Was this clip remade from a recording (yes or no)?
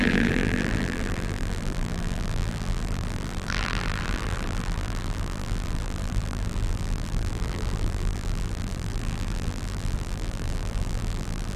yes